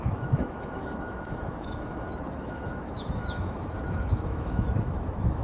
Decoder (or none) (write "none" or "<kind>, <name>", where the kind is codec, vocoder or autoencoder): autoencoder, DAC-VAE